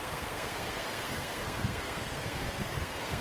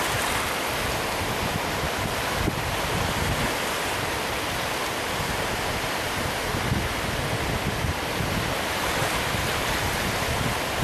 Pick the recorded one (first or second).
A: second